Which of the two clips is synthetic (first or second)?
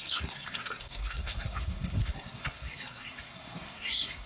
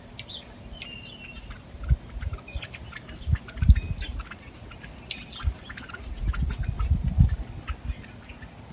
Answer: first